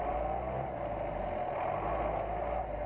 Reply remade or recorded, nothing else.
recorded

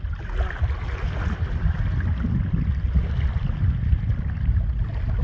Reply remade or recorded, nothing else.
recorded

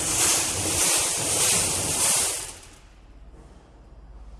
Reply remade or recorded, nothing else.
recorded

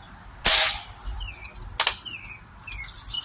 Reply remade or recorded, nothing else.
recorded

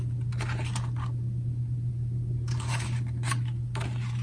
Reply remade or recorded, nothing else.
recorded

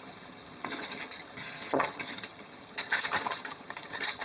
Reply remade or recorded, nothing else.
remade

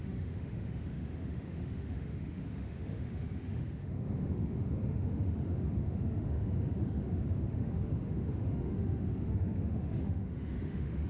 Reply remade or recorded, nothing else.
remade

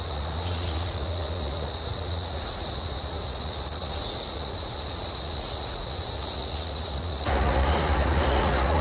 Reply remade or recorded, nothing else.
remade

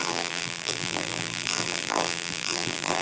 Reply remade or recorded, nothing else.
remade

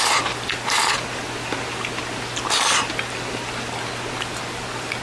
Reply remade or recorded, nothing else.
recorded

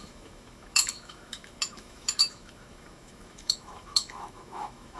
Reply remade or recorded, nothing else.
remade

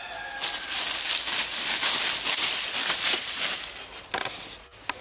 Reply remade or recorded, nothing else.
recorded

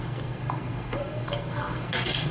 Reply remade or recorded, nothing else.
remade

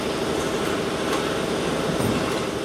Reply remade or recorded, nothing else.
recorded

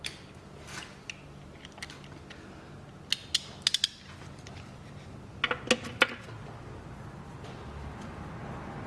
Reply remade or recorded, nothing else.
recorded